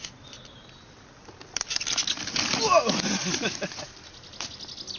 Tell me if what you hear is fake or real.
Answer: real